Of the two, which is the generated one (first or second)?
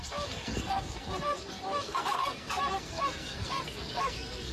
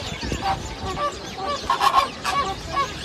first